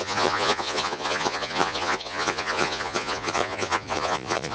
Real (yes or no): no